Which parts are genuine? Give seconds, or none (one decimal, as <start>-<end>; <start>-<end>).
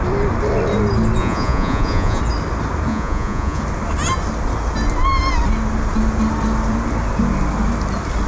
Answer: 0.0-1.2; 2.2-2.9; 3.6-8.3